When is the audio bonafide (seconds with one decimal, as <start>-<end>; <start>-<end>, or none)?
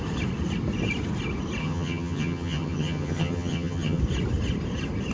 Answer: 0.0-1.6; 4.0-5.1